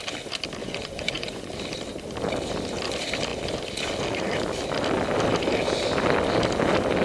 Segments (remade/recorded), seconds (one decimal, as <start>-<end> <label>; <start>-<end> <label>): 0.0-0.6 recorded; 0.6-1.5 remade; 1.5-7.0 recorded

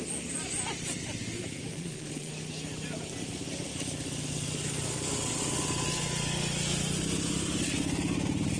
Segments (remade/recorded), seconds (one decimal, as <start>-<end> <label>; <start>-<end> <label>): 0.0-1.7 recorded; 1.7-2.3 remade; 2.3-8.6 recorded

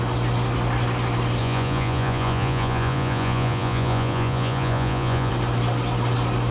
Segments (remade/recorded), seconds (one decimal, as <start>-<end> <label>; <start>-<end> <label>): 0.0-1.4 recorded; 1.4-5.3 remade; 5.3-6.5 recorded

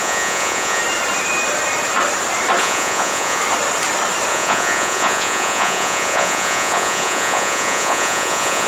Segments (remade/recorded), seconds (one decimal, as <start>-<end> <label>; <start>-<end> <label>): 0.0-0.8 remade; 0.8-2.6 recorded; 2.6-3.4 remade; 3.4-4.3 recorded; 4.3-8.7 remade

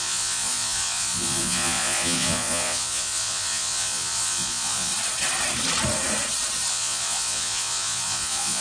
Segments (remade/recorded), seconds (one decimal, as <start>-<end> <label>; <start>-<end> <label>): 0.0-4.9 remade; 4.9-6.7 recorded; 6.7-8.6 remade